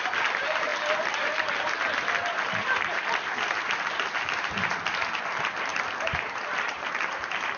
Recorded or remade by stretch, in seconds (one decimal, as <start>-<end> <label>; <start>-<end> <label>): 0.0-7.6 recorded

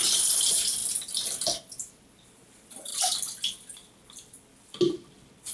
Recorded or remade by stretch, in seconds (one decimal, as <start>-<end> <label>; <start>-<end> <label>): 0.0-5.5 recorded

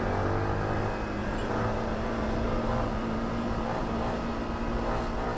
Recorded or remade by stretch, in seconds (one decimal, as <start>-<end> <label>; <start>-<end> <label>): 0.0-1.2 recorded; 1.2-3.9 remade; 3.9-5.4 recorded

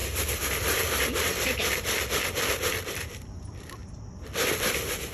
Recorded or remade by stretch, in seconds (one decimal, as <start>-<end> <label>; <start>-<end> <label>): 0.0-3.8 remade; 3.8-4.5 recorded; 4.5-5.1 remade

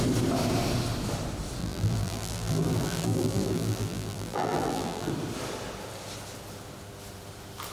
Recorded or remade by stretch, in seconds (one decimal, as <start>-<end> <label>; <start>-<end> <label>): 0.0-1.6 recorded; 1.6-5.1 remade; 5.1-7.7 recorded

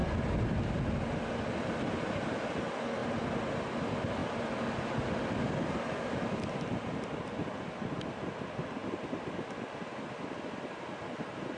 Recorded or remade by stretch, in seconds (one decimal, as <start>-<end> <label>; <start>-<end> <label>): 0.0-11.6 recorded

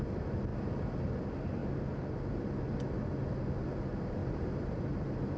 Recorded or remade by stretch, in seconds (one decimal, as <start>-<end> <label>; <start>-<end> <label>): 0.0-0.5 recorded; 0.5-1.1 remade; 1.1-4.2 recorded; 4.2-5.4 remade

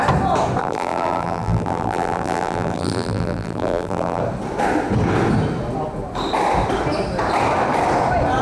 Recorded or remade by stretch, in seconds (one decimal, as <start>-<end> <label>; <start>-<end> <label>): 0.0-0.6 recorded; 0.6-4.2 remade; 4.2-8.4 recorded